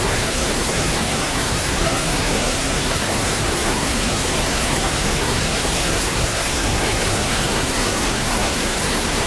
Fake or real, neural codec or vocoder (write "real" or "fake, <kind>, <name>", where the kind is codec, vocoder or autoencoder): fake, codec, SNAC